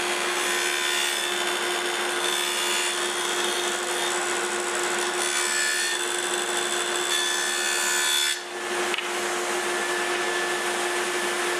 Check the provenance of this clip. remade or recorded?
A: recorded